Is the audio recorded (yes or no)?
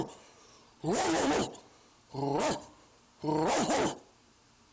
no